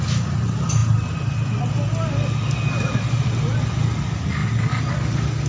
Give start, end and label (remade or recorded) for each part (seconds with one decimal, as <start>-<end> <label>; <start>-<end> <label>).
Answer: 0.0-5.5 recorded